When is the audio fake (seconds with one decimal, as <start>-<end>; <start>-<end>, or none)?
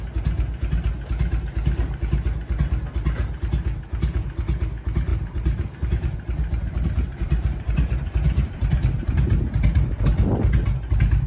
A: 5.1-10.0